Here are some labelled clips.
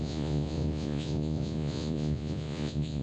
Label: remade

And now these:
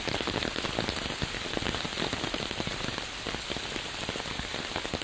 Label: recorded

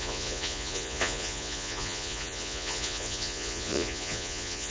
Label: remade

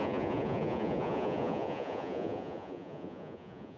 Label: remade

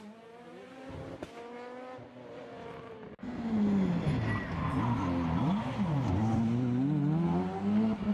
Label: recorded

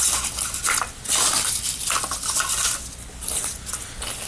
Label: recorded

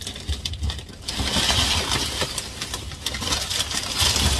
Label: recorded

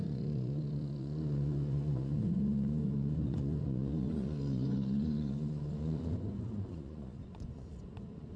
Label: remade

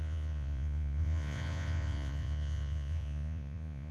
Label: remade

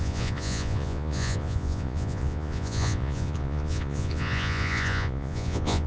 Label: remade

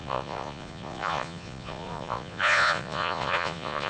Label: remade